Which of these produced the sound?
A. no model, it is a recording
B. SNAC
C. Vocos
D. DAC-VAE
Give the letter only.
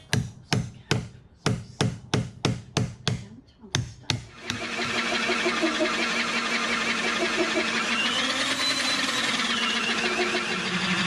A